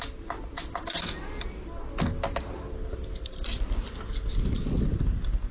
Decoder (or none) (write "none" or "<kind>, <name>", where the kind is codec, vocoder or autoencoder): none